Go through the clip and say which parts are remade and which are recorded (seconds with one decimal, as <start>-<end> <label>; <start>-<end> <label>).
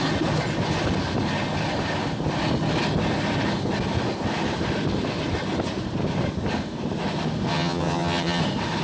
0.0-7.5 recorded; 7.5-8.4 remade; 8.4-8.8 recorded